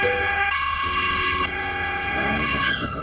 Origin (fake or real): fake